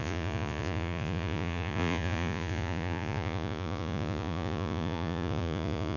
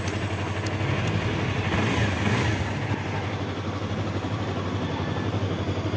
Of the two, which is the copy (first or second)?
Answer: first